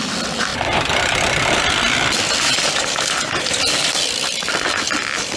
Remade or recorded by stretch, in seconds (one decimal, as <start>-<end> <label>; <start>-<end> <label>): 0.0-0.5 recorded; 0.5-3.1 remade; 3.1-5.4 recorded